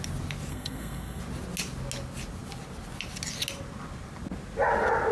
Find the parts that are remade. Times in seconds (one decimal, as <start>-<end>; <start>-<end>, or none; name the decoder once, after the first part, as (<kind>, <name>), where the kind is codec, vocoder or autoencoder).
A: 0.5-1.2 (codec, SNAC)

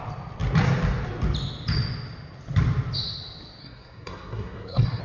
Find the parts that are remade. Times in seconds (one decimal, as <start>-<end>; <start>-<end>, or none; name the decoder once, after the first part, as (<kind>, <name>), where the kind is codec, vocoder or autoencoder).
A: 3.6-5.0 (codec, SNAC)

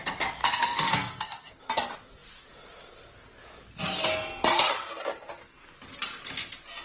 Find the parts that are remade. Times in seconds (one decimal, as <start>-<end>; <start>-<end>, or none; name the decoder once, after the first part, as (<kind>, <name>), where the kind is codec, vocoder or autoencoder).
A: 0.4-1.6 (codec, SNAC)

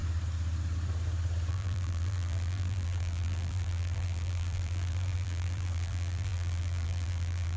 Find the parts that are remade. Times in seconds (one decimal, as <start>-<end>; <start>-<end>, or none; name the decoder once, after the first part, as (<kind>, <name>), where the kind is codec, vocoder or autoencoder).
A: 1.5-7.6 (vocoder, BigVGAN v2)

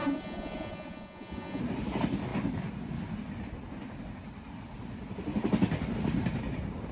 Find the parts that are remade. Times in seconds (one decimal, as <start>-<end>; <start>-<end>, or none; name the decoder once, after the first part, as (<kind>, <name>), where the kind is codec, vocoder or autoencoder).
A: 0.0-1.6 (vocoder, Vocos)

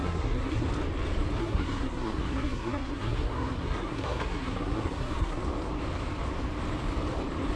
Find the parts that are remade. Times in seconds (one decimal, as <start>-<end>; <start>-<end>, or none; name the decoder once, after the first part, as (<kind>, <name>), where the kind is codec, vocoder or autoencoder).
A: 0.0-0.7 (codec, SNAC); 1.4-5.4